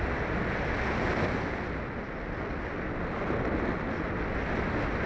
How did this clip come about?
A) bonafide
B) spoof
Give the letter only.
A